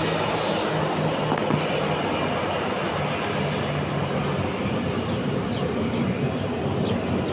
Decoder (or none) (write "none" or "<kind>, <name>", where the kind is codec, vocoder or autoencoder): none